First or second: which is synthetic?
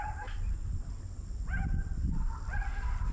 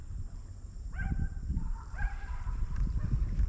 second